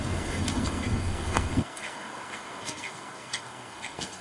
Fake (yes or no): yes